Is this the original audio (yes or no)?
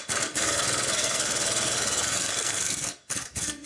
no